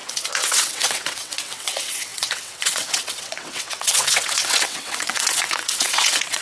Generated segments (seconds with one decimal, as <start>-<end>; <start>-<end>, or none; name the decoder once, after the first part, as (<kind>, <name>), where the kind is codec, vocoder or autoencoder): 0.0-6.4 (vocoder, WaveNeXt)